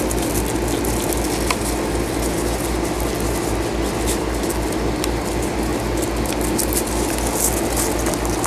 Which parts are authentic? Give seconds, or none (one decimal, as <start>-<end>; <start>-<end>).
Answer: 0.0-8.5